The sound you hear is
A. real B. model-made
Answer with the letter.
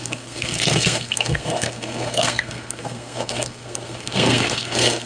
B